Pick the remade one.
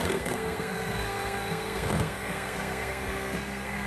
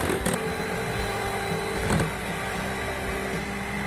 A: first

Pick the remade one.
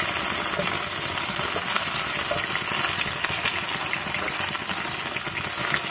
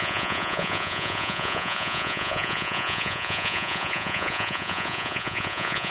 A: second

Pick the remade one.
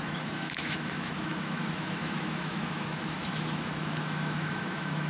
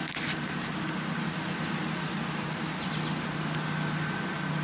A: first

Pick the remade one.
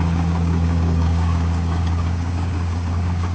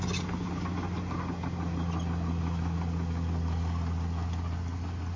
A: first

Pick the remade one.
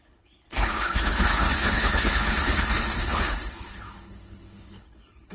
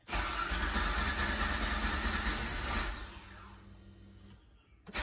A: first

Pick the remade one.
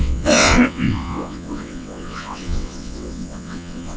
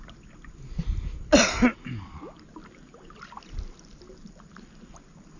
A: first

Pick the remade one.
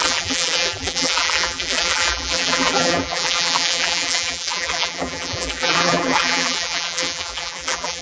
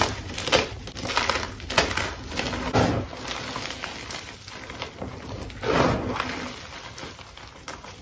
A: first